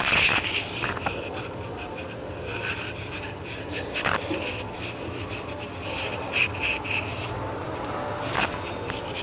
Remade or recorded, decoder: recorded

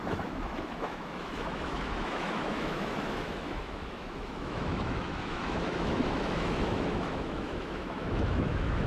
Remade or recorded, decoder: remade, autoencoder, DAC-VAE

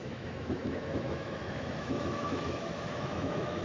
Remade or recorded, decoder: remade, autoencoder, DAC-VAE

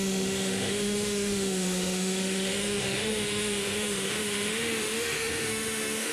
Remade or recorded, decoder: remade, autoencoder, DAC-VAE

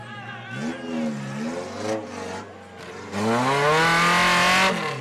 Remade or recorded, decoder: recorded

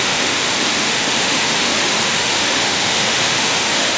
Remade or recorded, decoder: remade, autoencoder, DAC-VAE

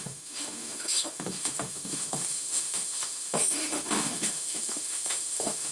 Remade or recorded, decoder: remade, autoencoder, DAC-VAE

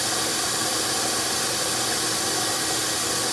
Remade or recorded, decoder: recorded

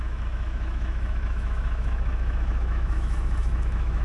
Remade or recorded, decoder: remade, autoencoder, DAC-VAE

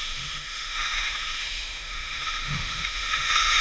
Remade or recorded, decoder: remade, autoencoder, DAC-VAE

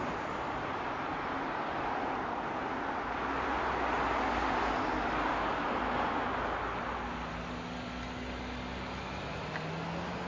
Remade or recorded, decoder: recorded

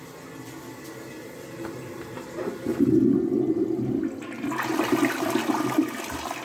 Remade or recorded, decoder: recorded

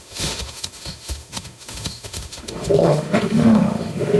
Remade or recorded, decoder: remade, autoencoder, DAC-VAE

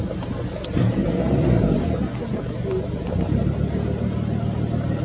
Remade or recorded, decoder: recorded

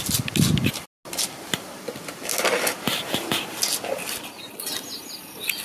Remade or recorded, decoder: recorded